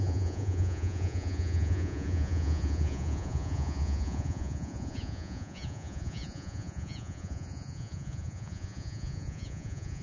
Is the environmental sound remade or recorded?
remade